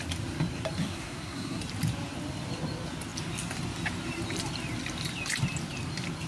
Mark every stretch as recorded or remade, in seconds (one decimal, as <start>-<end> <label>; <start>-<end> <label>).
0.0-0.8 recorded; 0.8-1.6 remade; 1.6-6.3 recorded